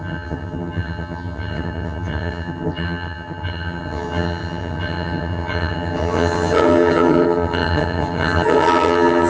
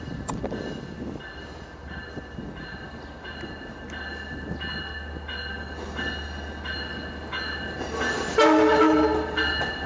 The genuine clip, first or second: second